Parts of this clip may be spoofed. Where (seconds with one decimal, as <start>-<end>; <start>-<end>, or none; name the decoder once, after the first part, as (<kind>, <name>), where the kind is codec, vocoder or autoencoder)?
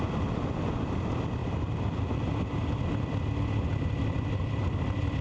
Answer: none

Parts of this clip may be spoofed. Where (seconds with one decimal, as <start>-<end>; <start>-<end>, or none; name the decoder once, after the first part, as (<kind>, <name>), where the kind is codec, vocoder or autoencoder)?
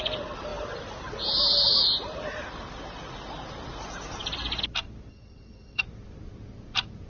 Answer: 5.1-5.8 (vocoder, WaveNeXt)